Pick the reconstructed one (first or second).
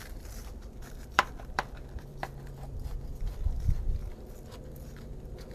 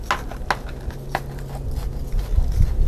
first